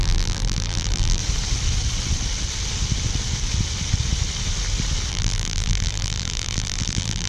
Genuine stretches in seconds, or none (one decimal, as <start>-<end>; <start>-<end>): 1.2-5.1